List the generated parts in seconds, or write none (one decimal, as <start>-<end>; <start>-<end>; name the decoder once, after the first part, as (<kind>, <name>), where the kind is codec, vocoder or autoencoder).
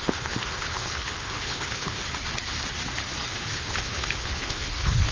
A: 0.0-2.0 (codec, HILCodec); 3.3-5.1